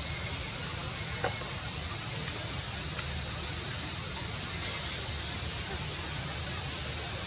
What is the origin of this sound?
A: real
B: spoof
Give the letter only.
A